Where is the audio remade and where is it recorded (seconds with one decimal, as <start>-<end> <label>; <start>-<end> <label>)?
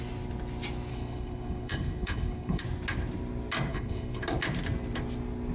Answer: 0.0-0.9 recorded; 0.9-2.6 remade; 2.6-3.7 recorded; 3.7-4.2 remade; 4.2-5.5 recorded